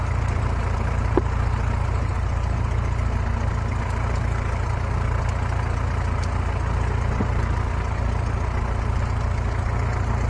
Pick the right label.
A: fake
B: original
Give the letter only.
B